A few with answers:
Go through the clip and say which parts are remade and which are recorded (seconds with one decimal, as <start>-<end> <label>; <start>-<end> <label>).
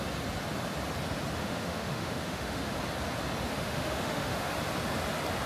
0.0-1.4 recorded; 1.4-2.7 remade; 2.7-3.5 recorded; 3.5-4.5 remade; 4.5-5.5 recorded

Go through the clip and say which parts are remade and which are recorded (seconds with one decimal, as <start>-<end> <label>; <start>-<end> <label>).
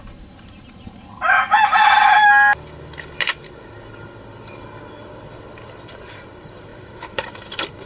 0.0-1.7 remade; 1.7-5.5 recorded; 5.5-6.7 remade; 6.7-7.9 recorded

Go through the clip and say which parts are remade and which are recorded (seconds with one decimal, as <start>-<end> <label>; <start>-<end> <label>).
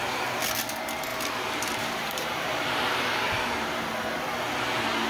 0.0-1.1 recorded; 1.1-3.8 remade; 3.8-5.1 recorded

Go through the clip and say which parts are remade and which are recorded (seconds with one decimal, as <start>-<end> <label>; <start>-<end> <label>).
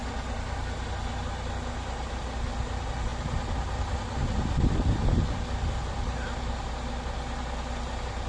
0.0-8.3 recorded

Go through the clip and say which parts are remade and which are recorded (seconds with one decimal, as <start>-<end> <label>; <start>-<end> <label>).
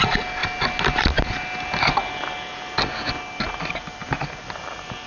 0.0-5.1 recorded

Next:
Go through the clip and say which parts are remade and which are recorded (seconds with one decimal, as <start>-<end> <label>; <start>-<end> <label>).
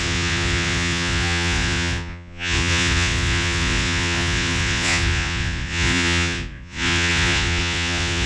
0.0-8.3 remade